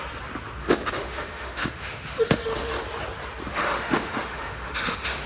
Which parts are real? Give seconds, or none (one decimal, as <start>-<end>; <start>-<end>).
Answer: 0.0-0.6; 2.7-3.5